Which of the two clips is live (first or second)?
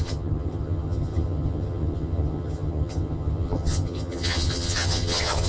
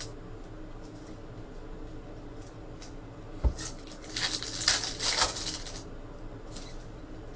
second